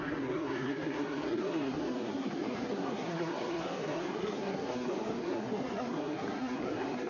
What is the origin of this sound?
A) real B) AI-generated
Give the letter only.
B